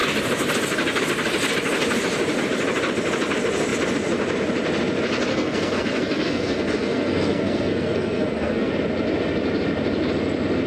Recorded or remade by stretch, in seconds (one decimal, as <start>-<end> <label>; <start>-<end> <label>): 0.0-5.3 recorded; 5.3-8.7 remade; 8.7-10.7 recorded

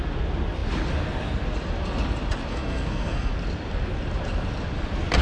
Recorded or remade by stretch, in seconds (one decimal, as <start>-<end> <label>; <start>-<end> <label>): 0.0-2.5 recorded; 2.5-3.3 remade; 3.3-5.2 recorded

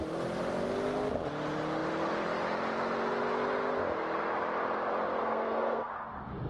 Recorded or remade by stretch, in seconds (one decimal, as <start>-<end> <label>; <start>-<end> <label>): 0.0-5.2 recorded; 5.2-5.9 remade; 5.9-6.5 recorded